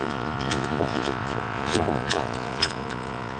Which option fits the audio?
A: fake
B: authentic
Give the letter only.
A